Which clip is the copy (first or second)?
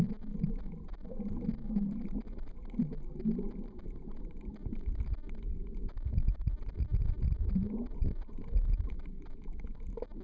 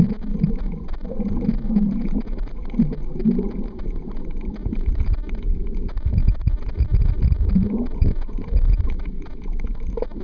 second